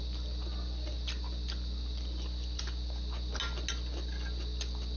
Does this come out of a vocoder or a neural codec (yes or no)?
no